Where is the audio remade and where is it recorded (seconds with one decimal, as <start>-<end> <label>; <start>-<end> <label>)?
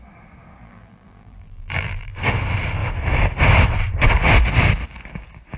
0.0-0.6 recorded; 0.6-2.1 remade; 2.1-5.6 recorded